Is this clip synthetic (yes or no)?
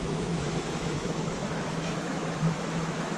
yes